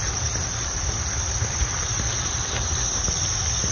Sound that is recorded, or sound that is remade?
recorded